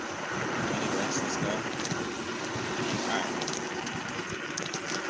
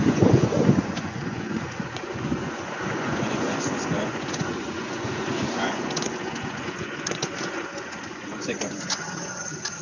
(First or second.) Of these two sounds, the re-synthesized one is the second